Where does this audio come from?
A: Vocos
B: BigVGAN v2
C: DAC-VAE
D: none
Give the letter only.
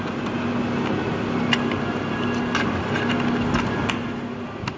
D